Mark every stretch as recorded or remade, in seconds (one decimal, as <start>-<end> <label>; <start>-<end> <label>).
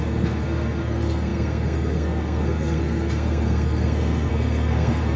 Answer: 0.0-5.2 remade